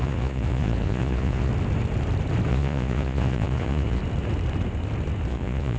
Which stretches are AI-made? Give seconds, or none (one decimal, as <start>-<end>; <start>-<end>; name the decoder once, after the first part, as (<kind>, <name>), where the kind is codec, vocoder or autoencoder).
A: 0.0-1.5 (vocoder, Vocos); 2.5-4.0; 5.3-5.8